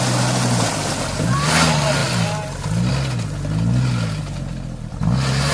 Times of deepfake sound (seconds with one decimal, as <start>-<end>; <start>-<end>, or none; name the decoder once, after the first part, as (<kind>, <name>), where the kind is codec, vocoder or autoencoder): none